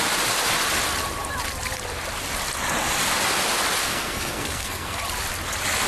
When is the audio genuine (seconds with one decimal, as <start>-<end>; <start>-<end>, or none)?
0.0-3.8; 5.0-5.9